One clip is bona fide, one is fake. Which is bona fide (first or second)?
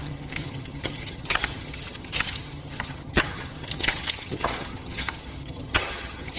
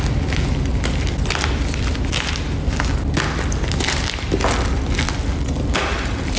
second